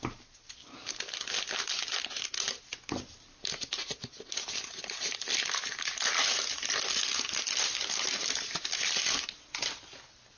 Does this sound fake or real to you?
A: real